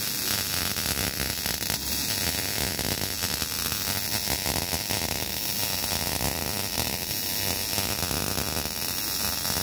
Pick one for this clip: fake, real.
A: real